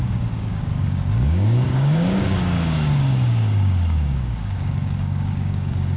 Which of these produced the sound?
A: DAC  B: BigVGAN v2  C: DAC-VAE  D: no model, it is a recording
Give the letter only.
A